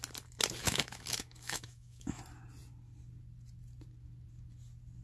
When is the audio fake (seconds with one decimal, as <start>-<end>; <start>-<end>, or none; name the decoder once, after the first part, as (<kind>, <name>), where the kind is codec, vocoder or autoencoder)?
0.6-2.2 (autoencoder, DAC-VAE)